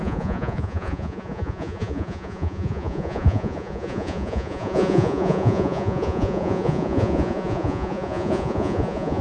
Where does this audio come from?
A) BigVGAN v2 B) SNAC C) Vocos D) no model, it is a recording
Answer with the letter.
C